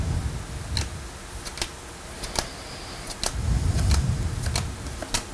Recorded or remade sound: recorded